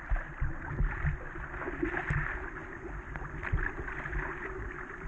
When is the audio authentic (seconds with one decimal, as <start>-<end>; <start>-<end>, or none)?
0.0-5.1